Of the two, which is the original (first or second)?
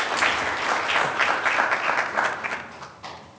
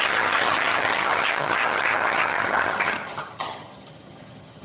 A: first